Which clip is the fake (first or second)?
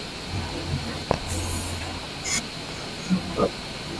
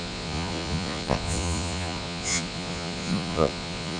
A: second